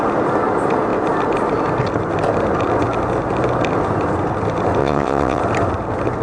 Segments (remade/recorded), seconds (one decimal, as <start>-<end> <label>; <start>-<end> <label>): 0.0-4.8 recorded; 4.8-5.4 remade; 5.4-6.2 recorded